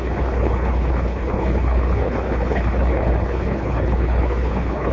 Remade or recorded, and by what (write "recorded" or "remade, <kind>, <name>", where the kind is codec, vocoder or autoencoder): remade, codec, HILCodec